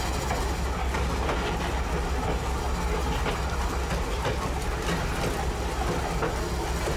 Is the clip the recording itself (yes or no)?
yes